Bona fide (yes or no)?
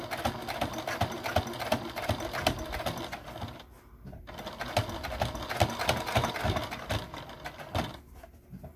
yes